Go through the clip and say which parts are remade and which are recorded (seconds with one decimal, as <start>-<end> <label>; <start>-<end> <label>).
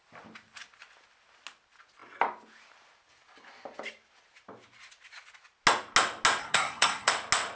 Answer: 0.0-6.4 recorded; 6.4-7.1 remade; 7.1-7.5 recorded